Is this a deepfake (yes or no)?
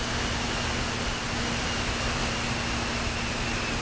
no